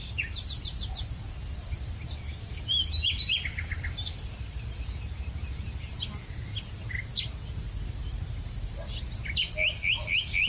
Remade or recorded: recorded